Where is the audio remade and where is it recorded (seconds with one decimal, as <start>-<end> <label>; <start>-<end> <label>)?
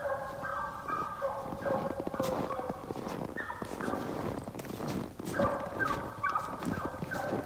0.0-7.5 recorded